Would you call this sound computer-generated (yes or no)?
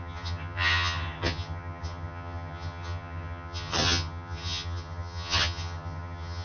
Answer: yes